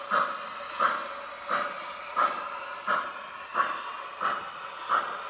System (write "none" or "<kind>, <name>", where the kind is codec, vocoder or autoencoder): none